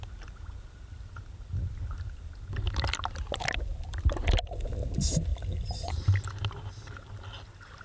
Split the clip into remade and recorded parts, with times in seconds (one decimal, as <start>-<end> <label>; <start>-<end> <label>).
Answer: 0.0-5.3 recorded; 5.3-5.9 remade; 5.9-7.8 recorded